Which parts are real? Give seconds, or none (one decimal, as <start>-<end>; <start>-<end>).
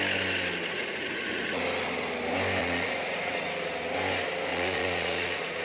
0.0-0.7; 1.6-2.6; 3.5-4.5